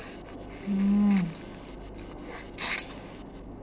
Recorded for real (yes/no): yes